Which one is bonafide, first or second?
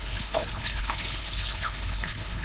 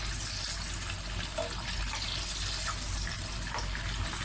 second